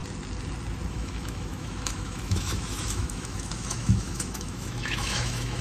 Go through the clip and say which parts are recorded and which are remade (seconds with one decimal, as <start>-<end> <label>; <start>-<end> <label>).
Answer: 0.0-0.9 recorded; 0.9-5.6 remade